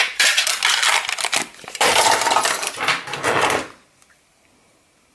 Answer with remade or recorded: recorded